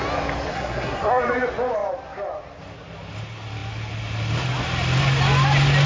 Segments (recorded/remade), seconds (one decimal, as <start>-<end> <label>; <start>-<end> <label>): 0.0-0.5 recorded; 0.5-1.2 remade; 1.2-5.9 recorded